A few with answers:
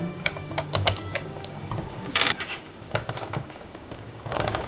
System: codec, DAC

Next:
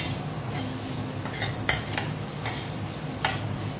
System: none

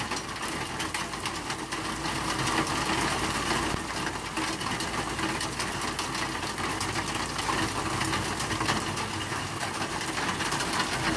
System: none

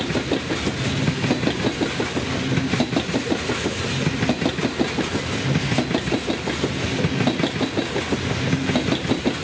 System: none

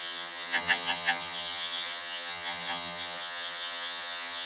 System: vocoder, HiFi-GAN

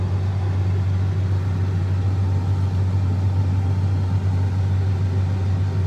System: none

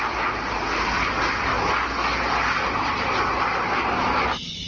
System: none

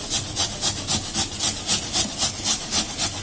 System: none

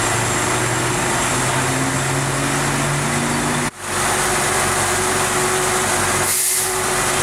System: none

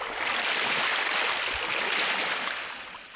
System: none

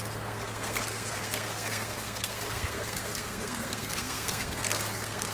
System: codec, SNAC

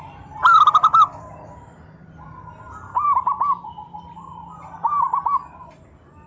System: vocoder, BigVGAN v2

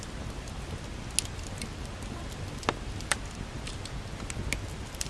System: none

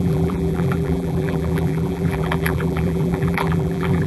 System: vocoder, BigVGAN v2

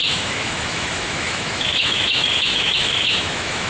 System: autoencoder, DAC-VAE